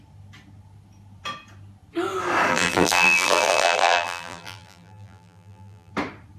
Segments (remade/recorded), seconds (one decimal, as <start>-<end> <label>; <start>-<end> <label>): 0.0-2.5 recorded; 2.5-5.9 remade; 5.9-6.4 recorded